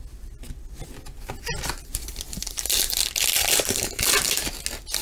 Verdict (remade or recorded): recorded